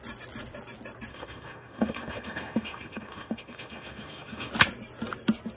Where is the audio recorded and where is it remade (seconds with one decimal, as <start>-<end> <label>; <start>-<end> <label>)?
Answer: 0.0-1.1 recorded; 1.1-4.5 remade; 4.5-5.6 recorded